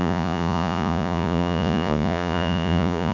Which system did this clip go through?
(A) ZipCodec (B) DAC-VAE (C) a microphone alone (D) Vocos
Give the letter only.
D